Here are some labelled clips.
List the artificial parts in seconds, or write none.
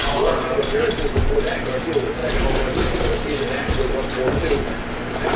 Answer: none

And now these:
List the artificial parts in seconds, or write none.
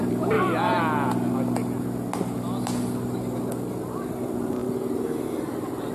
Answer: 0.0-0.7 (vocoder, BigVGAN v2); 4.0-4.6; 5.3-5.9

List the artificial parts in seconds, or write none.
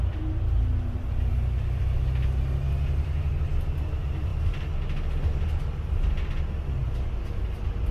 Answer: none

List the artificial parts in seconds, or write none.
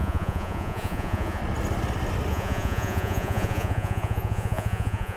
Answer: 0.0-1.4 (vocoder, Vocos); 2.3-5.2